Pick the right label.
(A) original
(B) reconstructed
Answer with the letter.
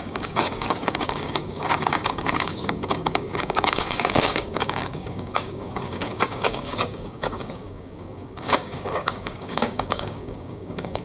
B